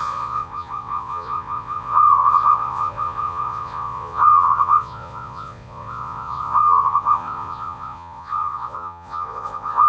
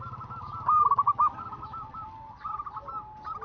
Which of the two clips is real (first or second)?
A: second